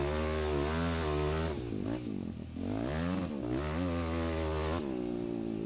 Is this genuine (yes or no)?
yes